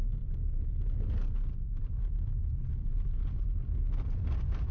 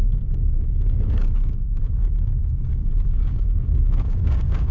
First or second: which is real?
first